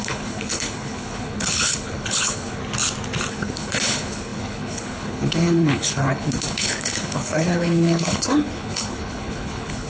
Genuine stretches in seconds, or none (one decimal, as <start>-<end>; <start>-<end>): 2.6-3.3